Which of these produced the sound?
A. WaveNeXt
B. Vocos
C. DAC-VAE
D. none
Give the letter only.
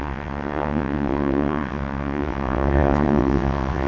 A